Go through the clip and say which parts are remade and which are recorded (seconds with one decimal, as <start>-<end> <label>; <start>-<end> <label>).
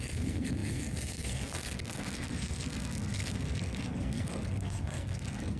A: 0.0-5.6 remade